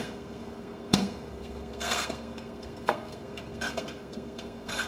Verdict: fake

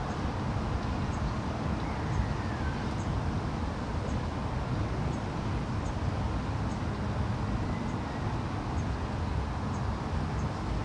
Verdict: real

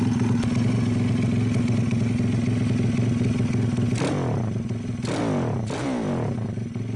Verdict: real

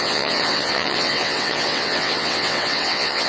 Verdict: fake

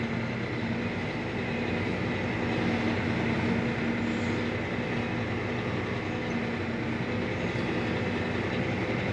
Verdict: real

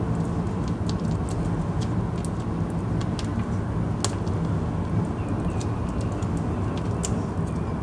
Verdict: real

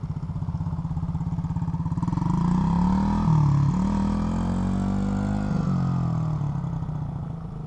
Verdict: real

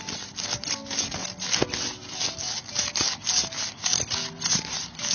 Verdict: real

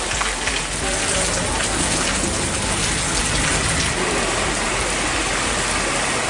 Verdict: real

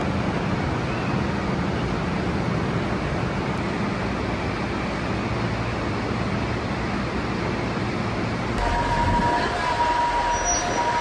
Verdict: real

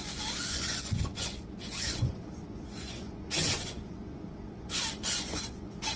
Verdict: fake